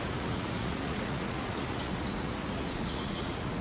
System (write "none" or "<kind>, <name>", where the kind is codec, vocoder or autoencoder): vocoder, Vocos